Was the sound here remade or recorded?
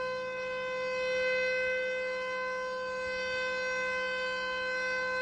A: recorded